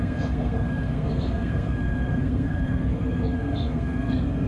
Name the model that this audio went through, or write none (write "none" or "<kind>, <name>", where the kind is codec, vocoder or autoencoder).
codec, SNAC